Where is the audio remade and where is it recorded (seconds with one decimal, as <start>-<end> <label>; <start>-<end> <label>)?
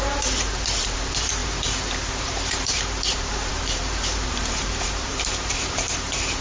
0.0-6.4 remade